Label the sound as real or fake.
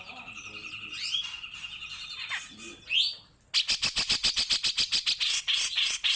real